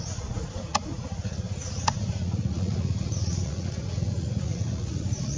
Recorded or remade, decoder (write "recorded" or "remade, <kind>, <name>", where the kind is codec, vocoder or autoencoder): remade, vocoder, Vocos